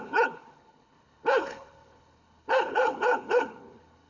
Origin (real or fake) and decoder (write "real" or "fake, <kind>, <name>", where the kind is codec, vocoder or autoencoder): fake, codec, HILCodec